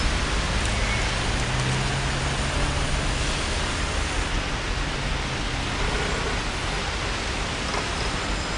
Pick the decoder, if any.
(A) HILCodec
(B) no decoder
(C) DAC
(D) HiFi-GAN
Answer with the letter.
B